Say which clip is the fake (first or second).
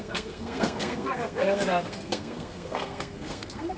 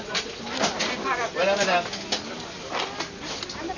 first